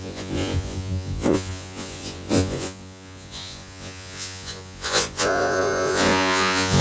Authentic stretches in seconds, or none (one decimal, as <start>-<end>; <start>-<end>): none